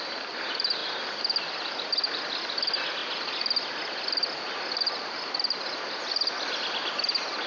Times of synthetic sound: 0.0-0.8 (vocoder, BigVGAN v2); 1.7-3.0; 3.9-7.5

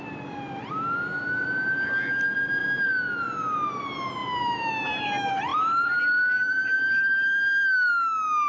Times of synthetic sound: 4.2-4.7 (vocoder, BigVGAN v2); 5.5-7.9

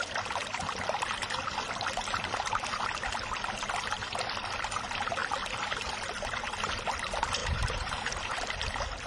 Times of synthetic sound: 7.4-7.9 (vocoder, BigVGAN v2)

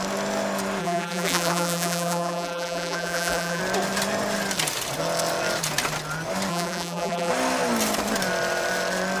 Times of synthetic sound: 0.8-3.6 (vocoder, BigVGAN v2); 6.5-7.3